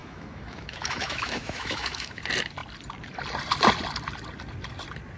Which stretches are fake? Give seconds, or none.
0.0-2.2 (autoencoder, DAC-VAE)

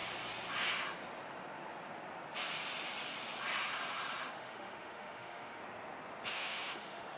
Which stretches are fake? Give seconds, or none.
4.3-5.6 (autoencoder, DAC-VAE); 6.3-7.2

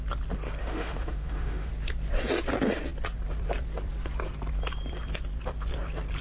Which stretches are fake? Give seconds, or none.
0.6-1.7 (autoencoder, DAC-VAE)

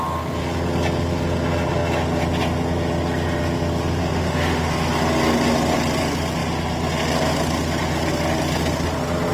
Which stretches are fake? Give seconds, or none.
4.0-4.7 (autoencoder, DAC-VAE)

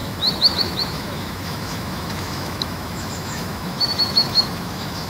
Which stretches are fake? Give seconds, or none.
0.0-5.1 (autoencoder, DAC-VAE)